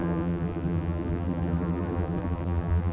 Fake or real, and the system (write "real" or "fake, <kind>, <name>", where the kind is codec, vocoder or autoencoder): fake, vocoder, BigVGAN v2